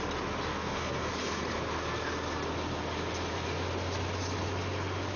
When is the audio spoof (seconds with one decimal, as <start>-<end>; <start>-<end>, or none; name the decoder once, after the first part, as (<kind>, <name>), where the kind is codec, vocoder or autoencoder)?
0.5-1.1 (codec, SNAC)